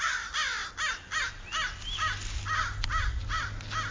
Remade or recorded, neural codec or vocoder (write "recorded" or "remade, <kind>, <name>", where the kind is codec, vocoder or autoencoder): recorded